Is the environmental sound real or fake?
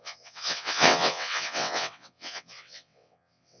fake